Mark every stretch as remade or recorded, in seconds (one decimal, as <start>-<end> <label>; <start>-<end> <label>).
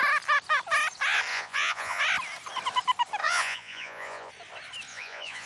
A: 0.0-1.3 recorded; 1.3-2.0 remade; 2.0-3.2 recorded; 3.2-4.3 remade; 4.3-4.9 recorded; 4.9-5.5 remade